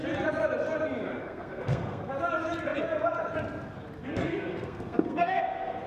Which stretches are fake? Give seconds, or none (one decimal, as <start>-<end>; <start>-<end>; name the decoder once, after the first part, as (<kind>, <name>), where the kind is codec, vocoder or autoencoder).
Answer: 1.1-2.2 (codec, SNAC); 4.0-5.9